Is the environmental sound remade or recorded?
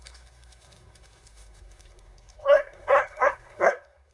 remade